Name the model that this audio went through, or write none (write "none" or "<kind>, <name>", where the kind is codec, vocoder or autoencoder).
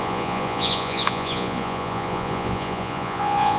vocoder, Vocos